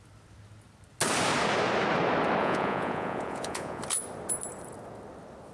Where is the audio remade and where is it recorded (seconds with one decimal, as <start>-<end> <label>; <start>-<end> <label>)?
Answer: 0.0-2.4 recorded; 2.4-3.8 remade; 3.8-5.5 recorded

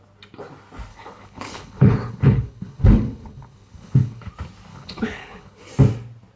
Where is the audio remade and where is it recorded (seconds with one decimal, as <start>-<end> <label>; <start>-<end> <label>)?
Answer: 0.0-0.9 recorded; 0.9-4.3 remade; 4.3-4.7 recorded; 4.7-5.7 remade; 5.7-6.4 recorded

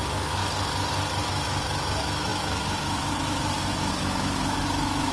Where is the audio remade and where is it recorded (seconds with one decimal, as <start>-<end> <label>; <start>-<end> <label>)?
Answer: 0.0-0.4 remade; 0.4-1.2 recorded; 1.2-5.1 remade

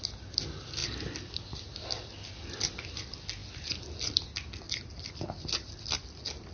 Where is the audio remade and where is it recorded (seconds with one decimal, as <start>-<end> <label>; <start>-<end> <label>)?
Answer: 0.0-6.5 recorded

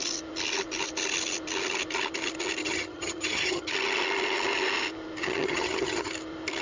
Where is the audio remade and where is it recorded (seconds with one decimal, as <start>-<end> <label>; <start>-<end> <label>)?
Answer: 0.0-2.6 recorded; 2.6-3.7 remade; 3.7-5.2 recorded; 5.2-6.1 remade; 6.1-6.6 recorded

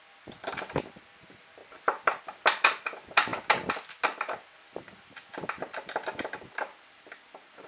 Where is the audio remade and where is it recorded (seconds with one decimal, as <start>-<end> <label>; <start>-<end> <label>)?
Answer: 0.0-7.7 recorded

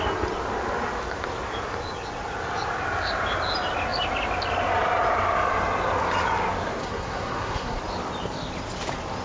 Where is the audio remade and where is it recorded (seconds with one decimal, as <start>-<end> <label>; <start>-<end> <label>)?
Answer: 0.0-6.8 recorded; 6.8-7.8 remade; 7.8-9.2 recorded

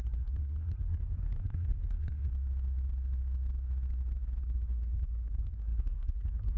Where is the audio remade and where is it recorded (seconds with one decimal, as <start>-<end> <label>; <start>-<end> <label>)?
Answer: 0.0-2.3 remade; 2.3-4.4 recorded; 4.4-6.6 remade